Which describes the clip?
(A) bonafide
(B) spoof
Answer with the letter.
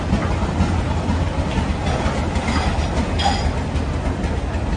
A